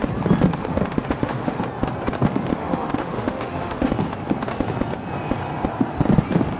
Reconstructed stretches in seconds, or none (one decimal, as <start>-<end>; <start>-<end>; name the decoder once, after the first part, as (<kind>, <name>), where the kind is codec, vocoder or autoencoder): 0.5-1.6 (autoencoder, DAC-VAE); 2.5-3.9